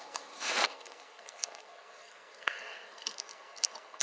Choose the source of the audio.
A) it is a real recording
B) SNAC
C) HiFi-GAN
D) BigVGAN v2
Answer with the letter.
B